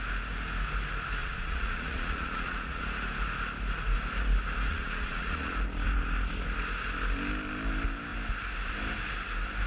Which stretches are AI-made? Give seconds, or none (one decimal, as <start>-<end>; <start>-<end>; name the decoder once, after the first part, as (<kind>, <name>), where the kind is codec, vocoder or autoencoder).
1.2-2.8 (vocoder, Vocos); 4.7-5.5